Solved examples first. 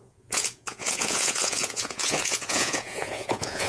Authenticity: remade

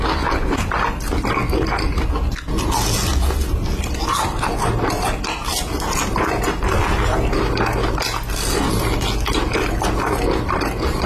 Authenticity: recorded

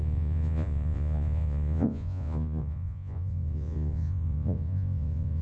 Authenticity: remade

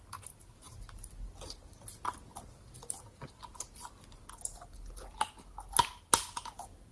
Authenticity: recorded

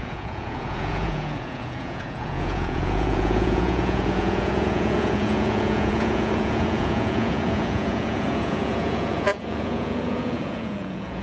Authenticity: remade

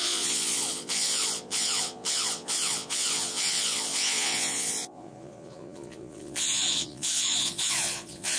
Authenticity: remade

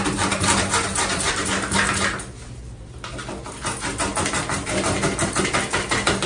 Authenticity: recorded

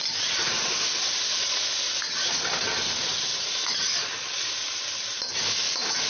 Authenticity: recorded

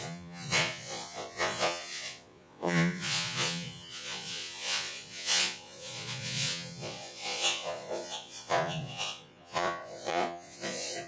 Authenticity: remade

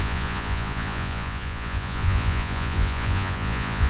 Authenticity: remade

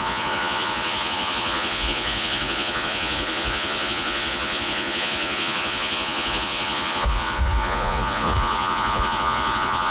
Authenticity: remade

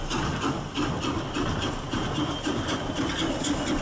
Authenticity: recorded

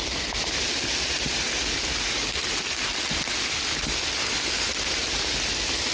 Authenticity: recorded